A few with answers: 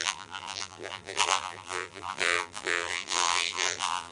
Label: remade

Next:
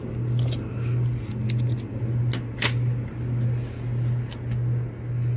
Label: recorded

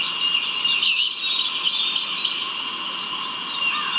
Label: recorded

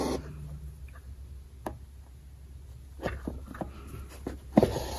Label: recorded